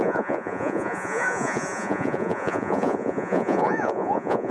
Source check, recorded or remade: remade